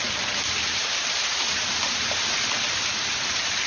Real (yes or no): yes